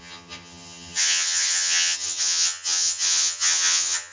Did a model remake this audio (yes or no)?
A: yes